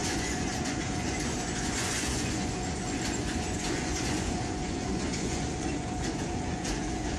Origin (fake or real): fake